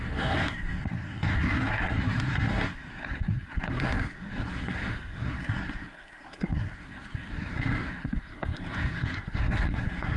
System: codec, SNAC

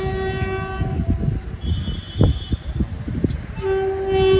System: none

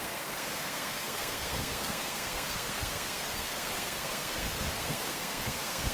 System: codec, SNAC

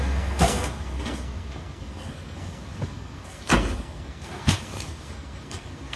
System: codec, SNAC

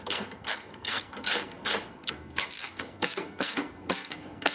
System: codec, SNAC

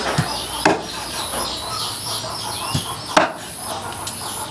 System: none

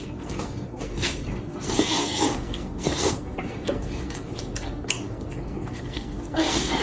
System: codec, SNAC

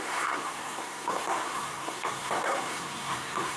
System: codec, SNAC